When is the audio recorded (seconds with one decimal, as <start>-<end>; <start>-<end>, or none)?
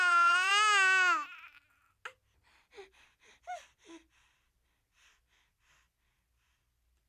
0.5-2.6